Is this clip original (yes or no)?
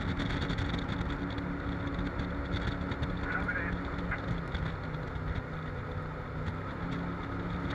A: yes